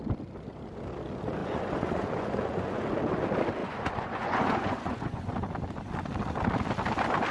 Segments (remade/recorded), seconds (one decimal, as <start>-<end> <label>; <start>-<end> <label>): 0.0-1.4 recorded; 1.4-2.8 remade; 2.8-3.6 recorded; 3.6-5.3 remade; 5.3-7.3 recorded